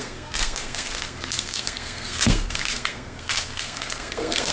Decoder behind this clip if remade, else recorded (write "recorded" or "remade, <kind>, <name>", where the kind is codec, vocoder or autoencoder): remade, codec, SNAC